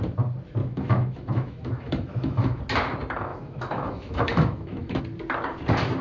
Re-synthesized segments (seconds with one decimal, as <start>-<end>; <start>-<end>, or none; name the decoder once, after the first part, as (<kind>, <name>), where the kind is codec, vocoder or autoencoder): 0.6-2.6 (autoencoder, DAC-VAE); 3.3-5.0